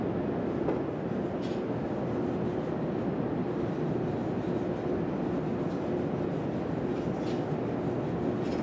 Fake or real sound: real